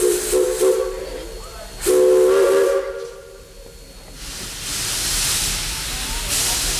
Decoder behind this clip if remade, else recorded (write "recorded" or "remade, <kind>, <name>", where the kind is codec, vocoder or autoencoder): recorded